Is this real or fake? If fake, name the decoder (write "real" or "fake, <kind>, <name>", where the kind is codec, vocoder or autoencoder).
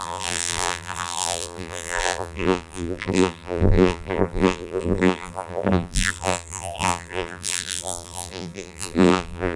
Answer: fake, vocoder, BigVGAN v2